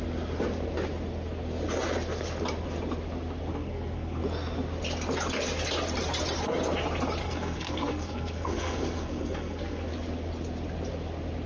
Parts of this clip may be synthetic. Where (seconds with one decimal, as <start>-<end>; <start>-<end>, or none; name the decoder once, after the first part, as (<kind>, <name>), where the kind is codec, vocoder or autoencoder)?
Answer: 3.5-4.2 (codec, SNAC); 7.2-9.9